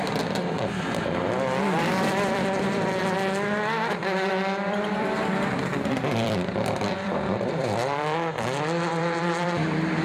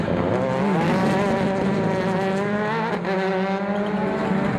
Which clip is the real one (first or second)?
second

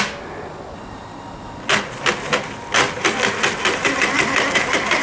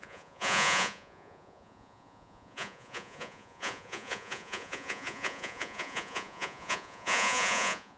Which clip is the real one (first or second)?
first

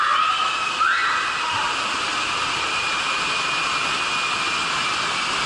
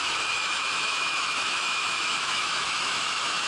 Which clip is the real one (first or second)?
first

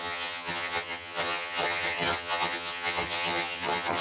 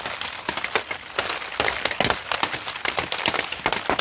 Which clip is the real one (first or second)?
second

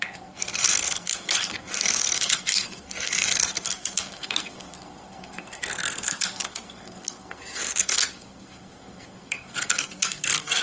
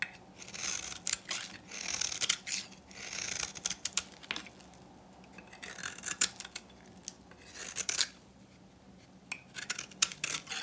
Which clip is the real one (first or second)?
second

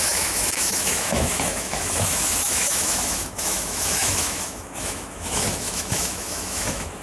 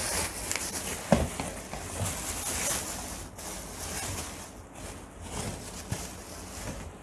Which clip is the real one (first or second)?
second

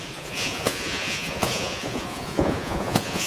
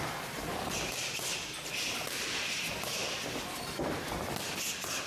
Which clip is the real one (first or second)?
second